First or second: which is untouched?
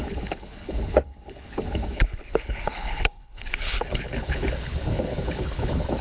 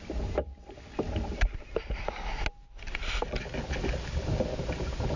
second